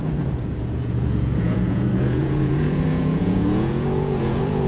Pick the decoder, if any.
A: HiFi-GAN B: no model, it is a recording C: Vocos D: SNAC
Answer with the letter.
C